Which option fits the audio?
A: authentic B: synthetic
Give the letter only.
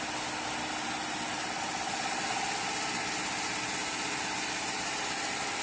A